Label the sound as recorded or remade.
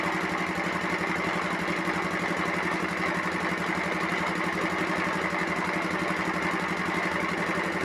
recorded